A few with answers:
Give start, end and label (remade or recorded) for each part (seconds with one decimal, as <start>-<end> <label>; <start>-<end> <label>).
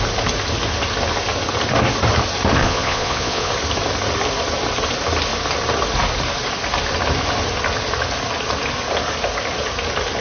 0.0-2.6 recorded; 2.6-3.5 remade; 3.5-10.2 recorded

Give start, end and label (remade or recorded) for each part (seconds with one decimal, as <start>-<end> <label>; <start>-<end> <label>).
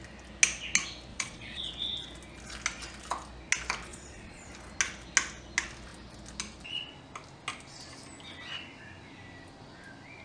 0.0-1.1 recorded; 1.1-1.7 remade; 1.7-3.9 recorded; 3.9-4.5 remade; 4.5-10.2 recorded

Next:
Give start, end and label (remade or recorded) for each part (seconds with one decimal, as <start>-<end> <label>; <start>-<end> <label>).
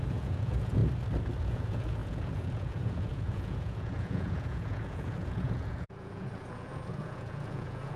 0.0-0.8 remade; 0.8-1.4 recorded; 1.4-8.0 remade